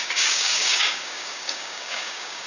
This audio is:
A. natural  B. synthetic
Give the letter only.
B